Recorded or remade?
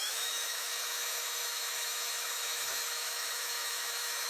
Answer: remade